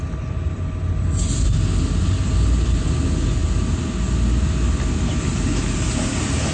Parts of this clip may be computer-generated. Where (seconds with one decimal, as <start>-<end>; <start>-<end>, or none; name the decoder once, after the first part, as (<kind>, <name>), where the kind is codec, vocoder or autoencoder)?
none